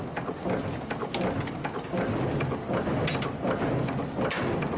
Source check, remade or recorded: recorded